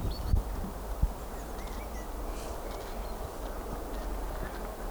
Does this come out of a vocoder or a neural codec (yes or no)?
no